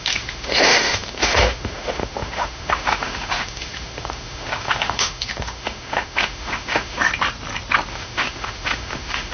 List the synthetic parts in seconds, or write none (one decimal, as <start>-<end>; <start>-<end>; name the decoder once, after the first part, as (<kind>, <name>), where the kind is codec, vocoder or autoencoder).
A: 0.0-7.1 (autoencoder, DAC-VAE); 7.9-9.3